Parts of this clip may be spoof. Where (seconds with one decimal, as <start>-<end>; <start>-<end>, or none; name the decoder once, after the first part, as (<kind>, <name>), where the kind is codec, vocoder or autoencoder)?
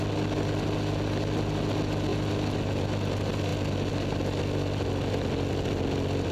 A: none